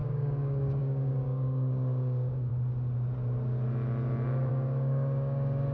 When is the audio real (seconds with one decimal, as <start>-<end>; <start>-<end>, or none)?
2.5-4.5